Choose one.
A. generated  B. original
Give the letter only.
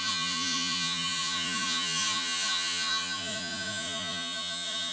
A